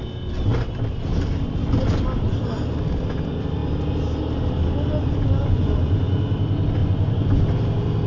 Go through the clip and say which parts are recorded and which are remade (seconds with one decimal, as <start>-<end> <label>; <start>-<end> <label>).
0.0-5.4 recorded; 5.4-6.2 remade; 6.2-6.8 recorded; 6.8-7.4 remade; 7.4-8.1 recorded